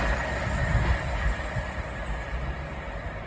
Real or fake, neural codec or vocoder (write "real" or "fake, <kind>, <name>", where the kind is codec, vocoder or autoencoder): real